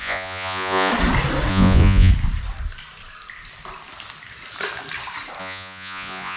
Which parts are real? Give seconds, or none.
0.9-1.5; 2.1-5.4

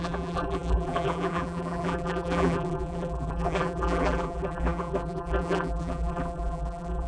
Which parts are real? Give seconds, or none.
none

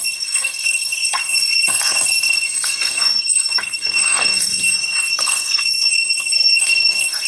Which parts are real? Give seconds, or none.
4.5-5.1

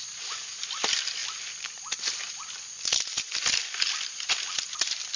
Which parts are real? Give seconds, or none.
0.0-5.2

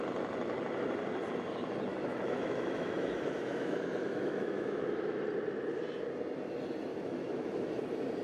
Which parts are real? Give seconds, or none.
0.0-1.9; 5.2-6.9; 7.7-8.2

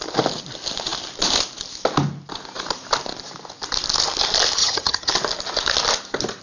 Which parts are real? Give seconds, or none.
0.0-4.6; 5.1-6.4